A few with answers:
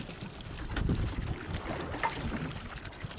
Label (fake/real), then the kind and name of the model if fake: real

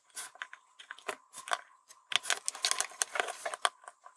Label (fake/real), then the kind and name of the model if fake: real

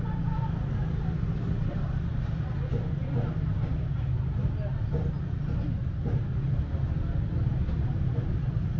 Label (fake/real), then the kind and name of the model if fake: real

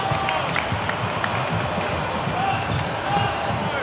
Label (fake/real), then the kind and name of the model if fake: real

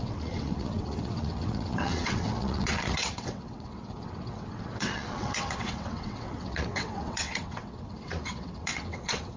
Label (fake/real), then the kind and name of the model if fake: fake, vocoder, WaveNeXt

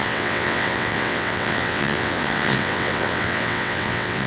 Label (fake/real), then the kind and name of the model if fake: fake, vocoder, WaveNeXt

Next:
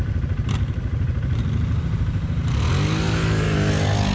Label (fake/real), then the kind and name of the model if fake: real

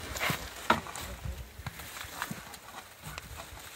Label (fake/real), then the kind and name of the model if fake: real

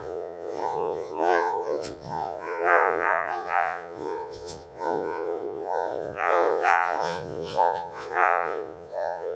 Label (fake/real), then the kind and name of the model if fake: fake, vocoder, Vocos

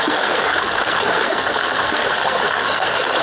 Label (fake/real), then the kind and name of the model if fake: fake, codec, SNAC